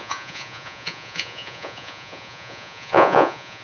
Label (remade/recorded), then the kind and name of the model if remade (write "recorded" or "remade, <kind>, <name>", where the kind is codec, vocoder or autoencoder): remade, vocoder, Vocos